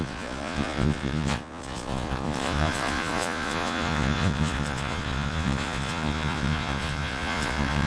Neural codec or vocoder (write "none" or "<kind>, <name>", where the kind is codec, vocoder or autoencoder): vocoder, Vocos